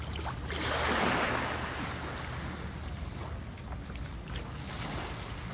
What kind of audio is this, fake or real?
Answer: real